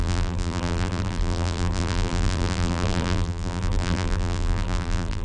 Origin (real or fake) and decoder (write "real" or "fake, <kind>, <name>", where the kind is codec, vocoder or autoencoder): fake, vocoder, BigVGAN v2